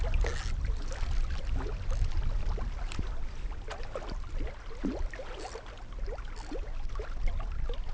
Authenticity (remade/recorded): recorded